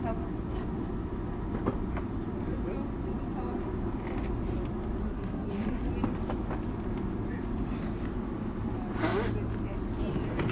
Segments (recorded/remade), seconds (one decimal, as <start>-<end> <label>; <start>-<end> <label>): 0.0-5.0 recorded; 5.0-5.9 remade; 5.9-10.5 recorded